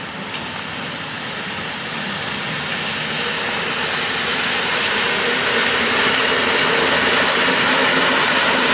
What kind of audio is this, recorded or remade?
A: recorded